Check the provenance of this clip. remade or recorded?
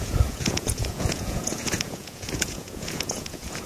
remade